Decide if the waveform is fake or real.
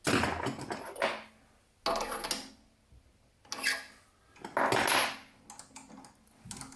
real